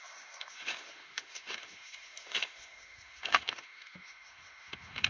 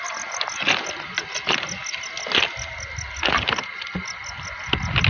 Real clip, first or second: second